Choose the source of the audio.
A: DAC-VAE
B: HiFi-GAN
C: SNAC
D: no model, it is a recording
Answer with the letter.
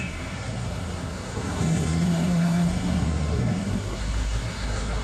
C